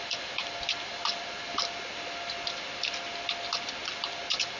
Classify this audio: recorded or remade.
recorded